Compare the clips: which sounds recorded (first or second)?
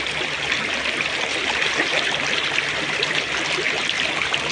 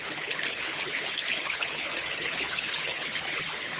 first